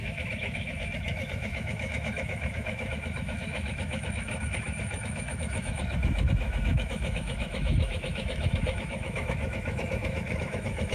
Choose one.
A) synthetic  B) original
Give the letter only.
A